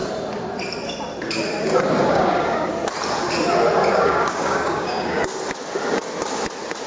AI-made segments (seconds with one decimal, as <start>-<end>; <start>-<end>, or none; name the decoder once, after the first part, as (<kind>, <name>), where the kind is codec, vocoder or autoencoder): 2.1-2.7 (codec, DAC); 3.9-5.2

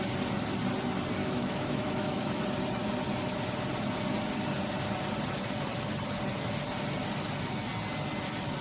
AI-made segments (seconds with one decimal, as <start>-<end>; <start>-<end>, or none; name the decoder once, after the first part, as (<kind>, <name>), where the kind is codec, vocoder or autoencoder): 1.2-2.4 (autoencoder, DAC-VAE)